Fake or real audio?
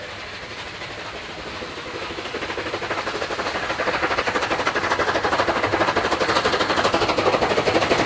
real